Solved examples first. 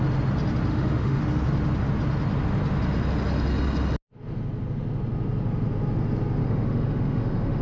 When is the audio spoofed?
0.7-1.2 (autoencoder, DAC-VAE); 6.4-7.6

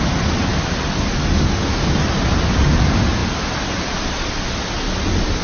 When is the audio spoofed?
none

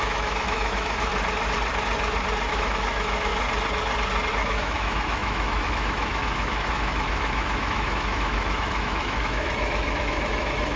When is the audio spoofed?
0.0-1.1 (autoencoder, DAC-VAE); 2.5-3.3; 4.3-10.8

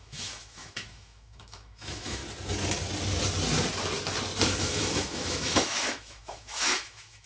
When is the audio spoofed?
0.0-2.2 (autoencoder, DAC-VAE); 4.6-7.3